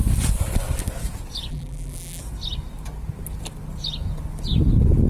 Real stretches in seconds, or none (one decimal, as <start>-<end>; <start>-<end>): 0.0-1.5; 2.2-5.1